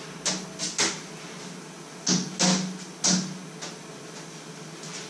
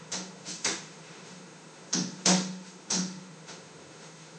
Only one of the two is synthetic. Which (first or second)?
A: second